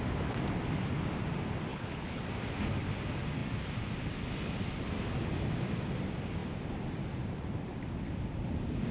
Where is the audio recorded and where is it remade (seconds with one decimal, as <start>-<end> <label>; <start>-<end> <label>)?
0.0-1.7 recorded; 1.7-2.2 remade; 2.2-8.9 recorded